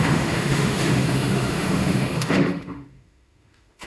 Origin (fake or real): fake